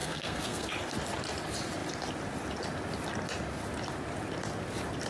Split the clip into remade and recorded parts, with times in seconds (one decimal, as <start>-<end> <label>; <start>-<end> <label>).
0.0-0.7 remade; 0.7-5.1 recorded